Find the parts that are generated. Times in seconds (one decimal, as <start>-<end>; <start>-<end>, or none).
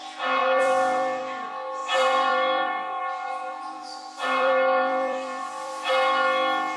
0.4-1.2; 1.8-5.9